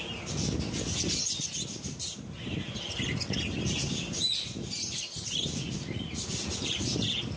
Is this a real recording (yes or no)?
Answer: yes